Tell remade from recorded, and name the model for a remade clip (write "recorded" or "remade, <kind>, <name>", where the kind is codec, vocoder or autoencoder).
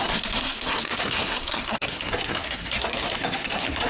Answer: remade, codec, SNAC